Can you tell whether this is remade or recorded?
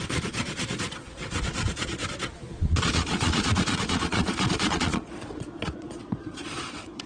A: remade